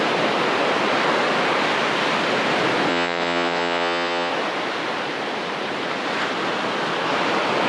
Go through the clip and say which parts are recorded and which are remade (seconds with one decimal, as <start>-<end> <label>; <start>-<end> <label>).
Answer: 0.0-2.9 recorded; 2.9-4.3 remade; 4.3-7.7 recorded